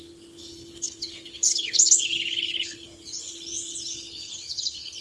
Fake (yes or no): yes